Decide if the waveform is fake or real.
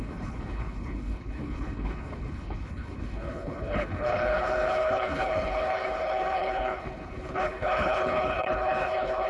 fake